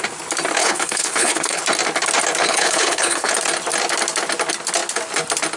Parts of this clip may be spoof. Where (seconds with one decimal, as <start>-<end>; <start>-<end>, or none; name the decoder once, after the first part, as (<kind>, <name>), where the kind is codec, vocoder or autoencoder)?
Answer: 0.6-1.6 (codec, HILCodec); 2.4-3.3